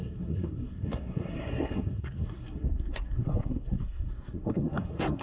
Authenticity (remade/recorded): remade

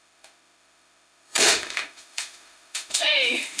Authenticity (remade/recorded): remade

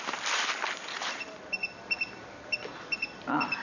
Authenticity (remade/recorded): recorded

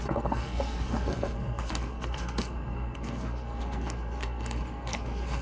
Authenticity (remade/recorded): remade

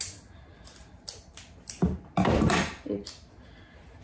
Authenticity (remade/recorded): recorded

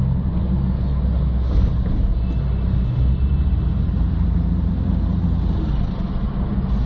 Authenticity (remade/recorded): recorded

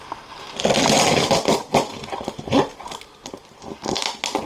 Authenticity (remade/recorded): recorded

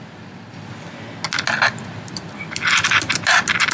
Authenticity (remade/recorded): recorded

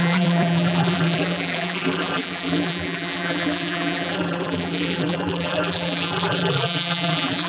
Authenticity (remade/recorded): remade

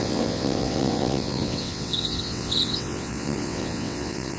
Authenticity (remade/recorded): remade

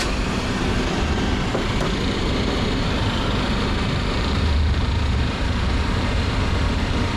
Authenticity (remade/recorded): remade